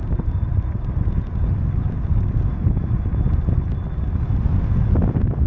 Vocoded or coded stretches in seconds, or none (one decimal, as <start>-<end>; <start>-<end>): none